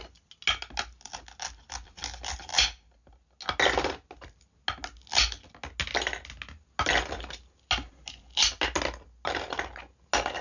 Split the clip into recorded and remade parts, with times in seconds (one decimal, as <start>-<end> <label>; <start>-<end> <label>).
0.0-10.4 recorded